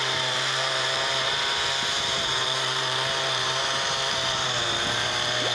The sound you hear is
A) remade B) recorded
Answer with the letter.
A